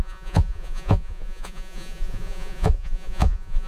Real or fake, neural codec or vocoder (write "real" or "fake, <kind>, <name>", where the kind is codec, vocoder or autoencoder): fake, vocoder, Vocos